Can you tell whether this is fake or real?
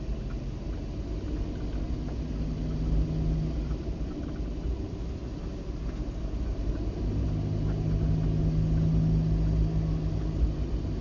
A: real